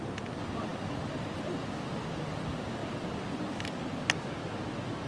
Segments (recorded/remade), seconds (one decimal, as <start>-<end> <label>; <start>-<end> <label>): 0.0-5.1 recorded